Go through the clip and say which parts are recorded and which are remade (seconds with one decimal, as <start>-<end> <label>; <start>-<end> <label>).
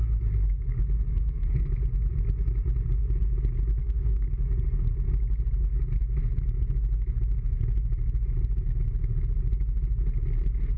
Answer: 0.0-1.1 recorded; 1.1-1.7 remade; 1.7-3.8 recorded; 3.8-4.3 remade; 4.3-10.8 recorded